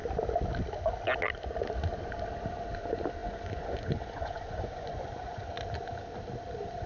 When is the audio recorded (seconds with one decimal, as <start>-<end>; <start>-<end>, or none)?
0.0-3.2; 5.4-6.9